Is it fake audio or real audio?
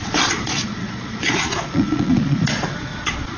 fake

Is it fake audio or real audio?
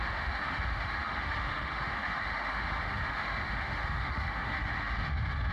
fake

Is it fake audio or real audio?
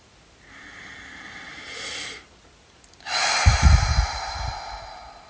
real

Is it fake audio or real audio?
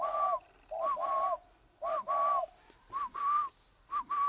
real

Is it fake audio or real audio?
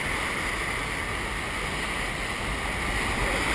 real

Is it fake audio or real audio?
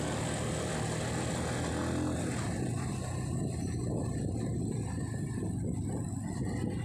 real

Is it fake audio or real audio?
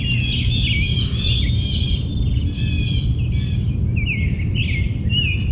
real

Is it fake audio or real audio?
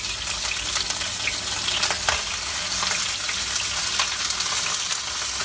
real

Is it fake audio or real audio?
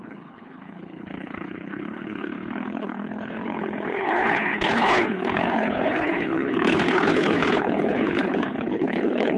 fake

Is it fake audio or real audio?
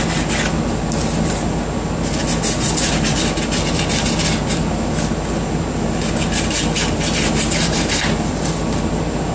real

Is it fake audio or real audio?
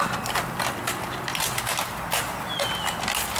real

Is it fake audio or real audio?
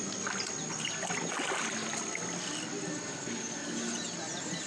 real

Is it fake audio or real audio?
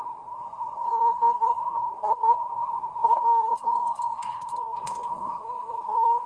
fake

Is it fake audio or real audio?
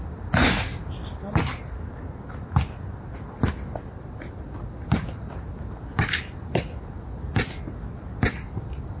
real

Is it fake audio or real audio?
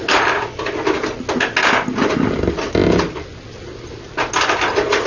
real